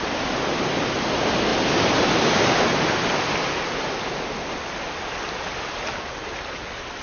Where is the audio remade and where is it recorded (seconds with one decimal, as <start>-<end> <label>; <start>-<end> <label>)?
0.0-7.0 recorded